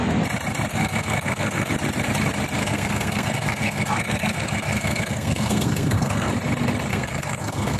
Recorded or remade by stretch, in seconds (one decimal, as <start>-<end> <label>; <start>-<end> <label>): 0.0-0.7 recorded; 0.7-1.7 remade; 1.7-2.6 recorded; 2.6-6.3 remade; 6.3-6.9 recorded; 6.9-7.8 remade